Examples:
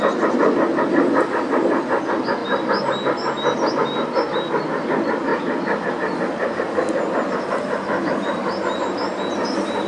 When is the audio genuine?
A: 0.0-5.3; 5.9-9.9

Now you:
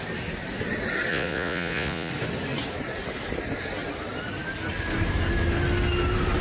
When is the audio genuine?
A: 0.0-1.1; 2.1-6.4